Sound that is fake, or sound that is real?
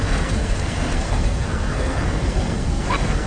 fake